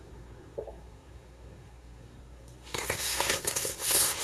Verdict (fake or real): fake